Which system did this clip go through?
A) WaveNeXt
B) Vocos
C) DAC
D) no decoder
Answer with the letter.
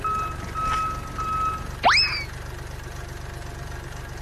D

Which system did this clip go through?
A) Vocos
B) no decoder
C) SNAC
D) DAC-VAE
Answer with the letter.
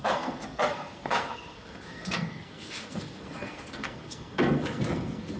C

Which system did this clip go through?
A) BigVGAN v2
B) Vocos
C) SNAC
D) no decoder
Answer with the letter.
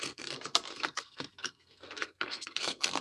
C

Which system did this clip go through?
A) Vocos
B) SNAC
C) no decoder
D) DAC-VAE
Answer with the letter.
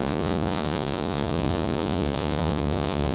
A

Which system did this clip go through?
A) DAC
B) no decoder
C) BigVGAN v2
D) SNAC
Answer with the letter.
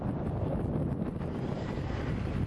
B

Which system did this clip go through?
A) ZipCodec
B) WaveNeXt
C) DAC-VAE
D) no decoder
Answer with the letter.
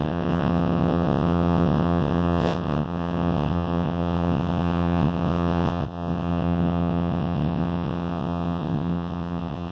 B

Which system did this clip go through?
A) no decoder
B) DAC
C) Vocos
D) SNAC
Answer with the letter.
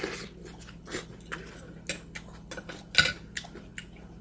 A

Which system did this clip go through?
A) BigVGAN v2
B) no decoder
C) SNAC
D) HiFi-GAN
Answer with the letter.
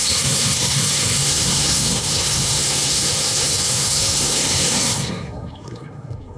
C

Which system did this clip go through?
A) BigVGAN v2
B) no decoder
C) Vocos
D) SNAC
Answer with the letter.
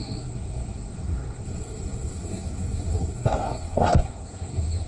D